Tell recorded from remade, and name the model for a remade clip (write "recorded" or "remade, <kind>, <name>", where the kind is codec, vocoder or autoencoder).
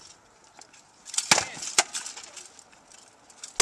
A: recorded